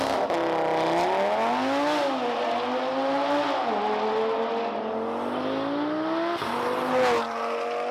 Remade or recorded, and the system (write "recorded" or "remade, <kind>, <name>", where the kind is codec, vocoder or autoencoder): recorded